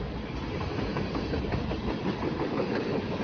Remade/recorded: recorded